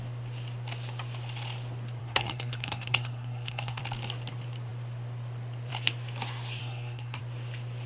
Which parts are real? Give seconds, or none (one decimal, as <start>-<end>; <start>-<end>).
0.0-2.0; 3.8-6.6; 7.2-7.9